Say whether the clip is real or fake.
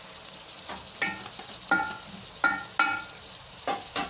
real